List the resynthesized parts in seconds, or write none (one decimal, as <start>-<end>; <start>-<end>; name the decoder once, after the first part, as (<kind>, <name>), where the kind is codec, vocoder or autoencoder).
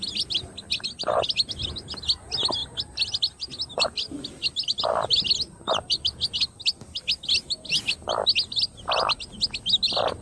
none